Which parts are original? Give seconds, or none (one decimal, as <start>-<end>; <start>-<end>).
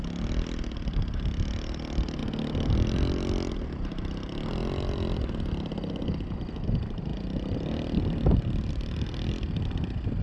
0.0-10.2